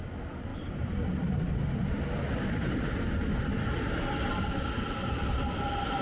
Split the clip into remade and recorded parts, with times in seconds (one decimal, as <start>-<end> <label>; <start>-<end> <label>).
0.0-0.5 recorded; 0.5-1.1 remade; 1.1-6.0 recorded